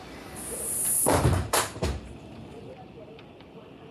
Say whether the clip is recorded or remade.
remade